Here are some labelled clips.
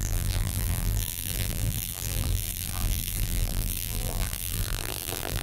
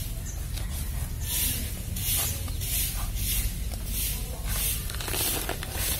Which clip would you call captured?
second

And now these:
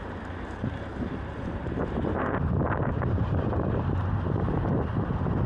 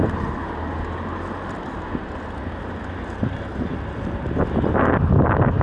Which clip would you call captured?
second